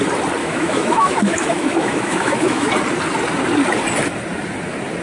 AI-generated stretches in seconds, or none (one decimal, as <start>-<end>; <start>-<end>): 0.4-2.7